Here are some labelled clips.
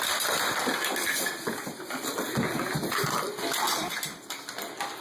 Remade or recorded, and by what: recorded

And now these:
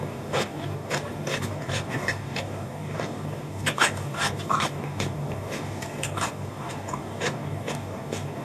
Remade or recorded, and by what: remade, codec, DAC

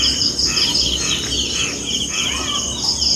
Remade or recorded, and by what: recorded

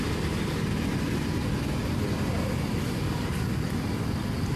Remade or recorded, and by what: recorded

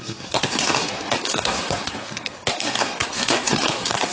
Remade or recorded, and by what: remade, codec, SNAC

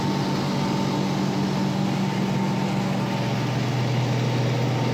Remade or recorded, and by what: recorded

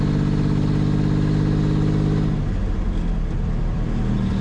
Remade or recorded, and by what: recorded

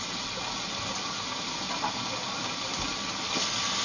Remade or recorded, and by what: recorded